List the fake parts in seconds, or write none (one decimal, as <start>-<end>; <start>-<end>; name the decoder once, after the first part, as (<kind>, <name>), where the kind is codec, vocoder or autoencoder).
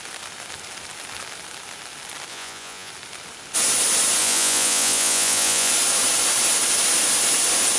2.3-2.9 (vocoder, Vocos); 4.2-5.7